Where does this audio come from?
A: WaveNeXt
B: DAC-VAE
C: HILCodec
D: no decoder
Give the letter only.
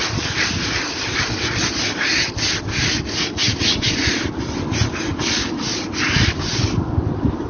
D